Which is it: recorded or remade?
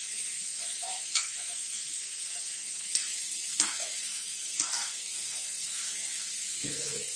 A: remade